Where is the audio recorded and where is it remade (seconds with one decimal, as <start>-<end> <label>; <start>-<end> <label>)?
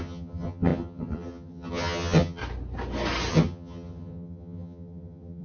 0.0-2.4 remade; 2.4-3.3 recorded; 3.3-5.4 remade